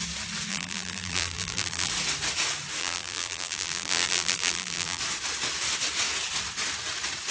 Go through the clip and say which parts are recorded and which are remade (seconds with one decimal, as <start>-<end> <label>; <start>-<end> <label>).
0.0-0.5 recorded; 0.5-1.9 remade; 1.9-2.8 recorded; 2.8-5.0 remade; 5.0-7.3 recorded